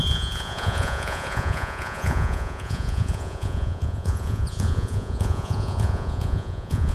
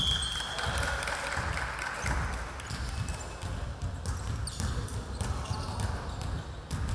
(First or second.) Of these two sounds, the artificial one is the first